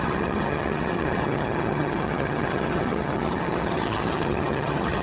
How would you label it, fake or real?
fake